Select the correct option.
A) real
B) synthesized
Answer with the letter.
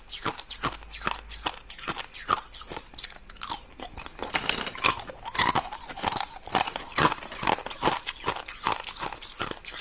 A